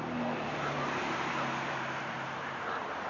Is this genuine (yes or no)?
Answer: no